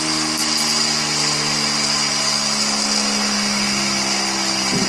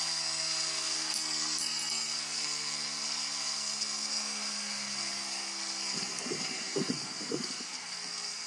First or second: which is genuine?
first